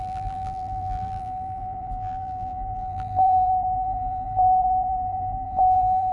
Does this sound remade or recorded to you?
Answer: remade